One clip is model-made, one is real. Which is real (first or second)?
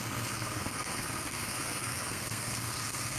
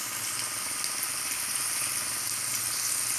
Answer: second